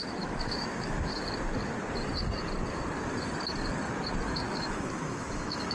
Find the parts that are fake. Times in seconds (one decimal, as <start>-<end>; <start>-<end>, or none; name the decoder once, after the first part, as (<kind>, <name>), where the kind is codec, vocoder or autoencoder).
0.0-1.1 (autoencoder, DAC-VAE); 4.5-5.7